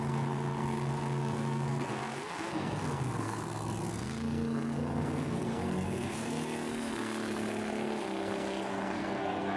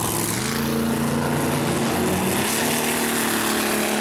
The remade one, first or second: first